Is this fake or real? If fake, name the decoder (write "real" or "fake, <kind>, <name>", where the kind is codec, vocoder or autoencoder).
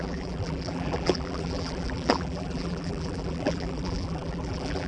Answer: fake, vocoder, BigVGAN v2